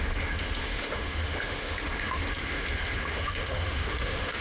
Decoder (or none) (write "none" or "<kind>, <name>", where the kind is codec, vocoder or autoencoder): autoencoder, DAC-VAE